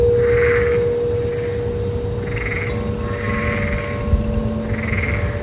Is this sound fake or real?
real